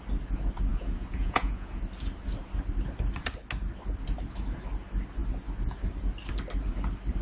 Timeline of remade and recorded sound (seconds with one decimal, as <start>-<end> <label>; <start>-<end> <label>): 0.0-0.7 recorded; 0.7-1.8 remade; 1.8-7.2 recorded